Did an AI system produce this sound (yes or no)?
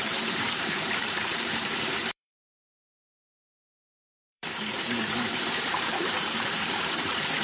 yes